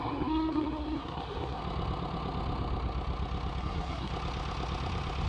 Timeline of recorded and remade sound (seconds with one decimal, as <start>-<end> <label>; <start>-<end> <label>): 0.0-1.6 remade; 1.6-3.6 recorded; 3.6-4.1 remade; 4.1-5.3 recorded